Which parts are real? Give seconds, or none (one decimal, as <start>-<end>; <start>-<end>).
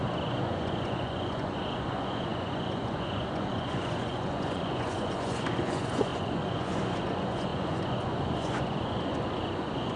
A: none